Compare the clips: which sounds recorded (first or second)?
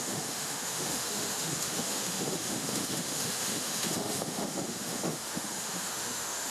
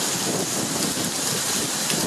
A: second